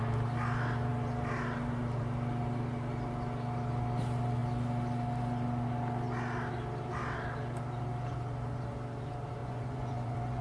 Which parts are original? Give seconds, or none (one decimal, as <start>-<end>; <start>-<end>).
0.0-9.4